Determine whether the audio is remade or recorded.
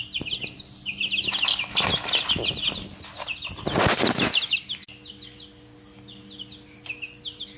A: recorded